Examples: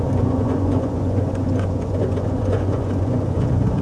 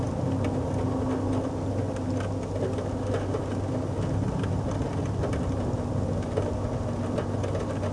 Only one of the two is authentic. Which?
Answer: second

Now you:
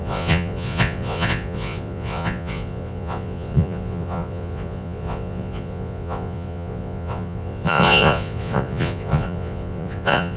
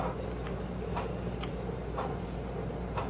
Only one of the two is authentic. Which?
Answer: second